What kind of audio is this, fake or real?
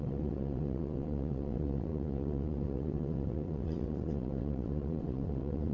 fake